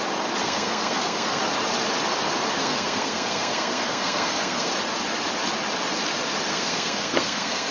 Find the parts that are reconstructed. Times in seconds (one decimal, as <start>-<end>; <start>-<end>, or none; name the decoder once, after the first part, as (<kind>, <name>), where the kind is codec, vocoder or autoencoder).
0.4-1.4 (codec, SNAC); 2.6-4.7; 6.5-7.7